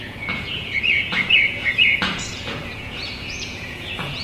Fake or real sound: fake